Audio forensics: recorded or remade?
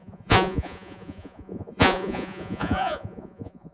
remade